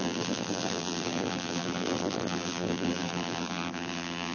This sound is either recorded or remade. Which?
remade